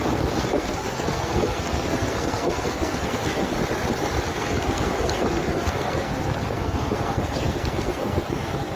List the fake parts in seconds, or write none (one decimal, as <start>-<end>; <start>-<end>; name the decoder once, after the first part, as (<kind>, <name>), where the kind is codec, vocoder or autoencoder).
0.0-3.5 (codec, SNAC); 4.3-8.8